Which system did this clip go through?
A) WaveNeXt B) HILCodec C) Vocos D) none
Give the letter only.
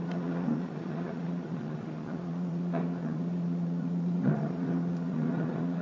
C